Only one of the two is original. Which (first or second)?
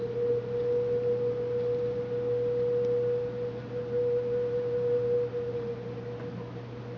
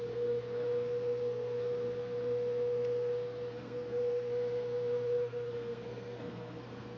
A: first